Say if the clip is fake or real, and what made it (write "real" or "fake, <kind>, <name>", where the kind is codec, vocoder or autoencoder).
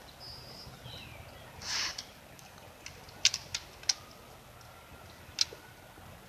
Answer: real